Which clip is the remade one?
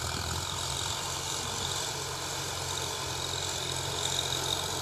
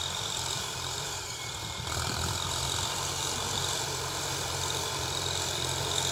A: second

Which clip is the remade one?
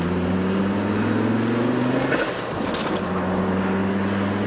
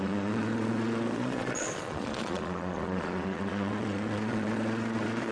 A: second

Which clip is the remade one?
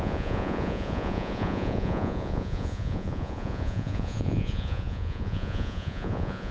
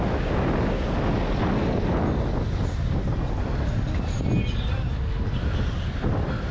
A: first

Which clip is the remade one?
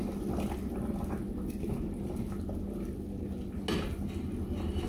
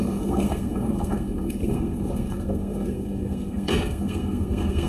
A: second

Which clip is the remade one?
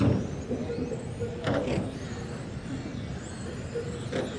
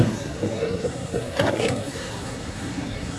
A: second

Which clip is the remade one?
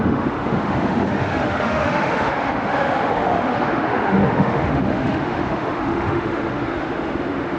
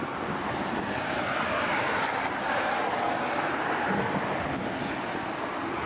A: first